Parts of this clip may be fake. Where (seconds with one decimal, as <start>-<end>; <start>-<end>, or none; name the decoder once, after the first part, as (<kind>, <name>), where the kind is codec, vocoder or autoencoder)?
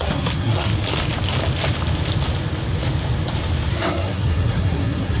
0.0-0.7 (codec, SNAC); 3.7-5.2